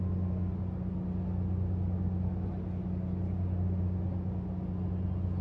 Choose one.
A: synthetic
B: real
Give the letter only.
B